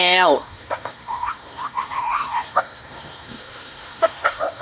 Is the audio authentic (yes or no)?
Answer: no